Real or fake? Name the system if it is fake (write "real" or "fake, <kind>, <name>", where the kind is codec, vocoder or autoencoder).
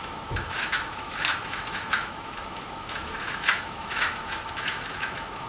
fake, autoencoder, DAC-VAE